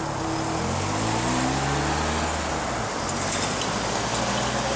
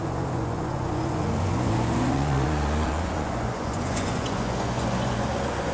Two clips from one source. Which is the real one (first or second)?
first